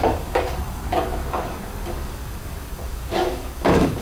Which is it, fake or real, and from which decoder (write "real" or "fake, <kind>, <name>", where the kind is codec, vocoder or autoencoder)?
fake, codec, DAC